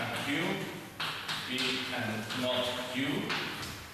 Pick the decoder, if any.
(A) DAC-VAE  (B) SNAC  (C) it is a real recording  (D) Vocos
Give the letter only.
C